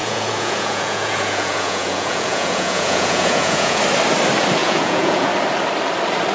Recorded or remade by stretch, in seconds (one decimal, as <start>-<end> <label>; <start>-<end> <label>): 0.0-3.8 remade; 3.8-4.6 recorded; 4.6-5.3 remade; 5.3-6.3 recorded